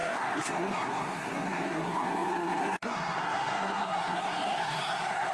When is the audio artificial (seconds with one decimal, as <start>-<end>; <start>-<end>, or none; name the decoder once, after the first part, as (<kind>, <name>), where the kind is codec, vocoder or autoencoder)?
0.0-5.3 (codec, SNAC)